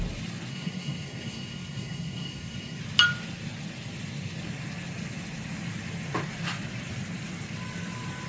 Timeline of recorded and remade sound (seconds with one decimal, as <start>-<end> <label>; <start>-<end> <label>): 0.0-0.5 recorded; 0.5-2.8 remade; 2.8-8.3 recorded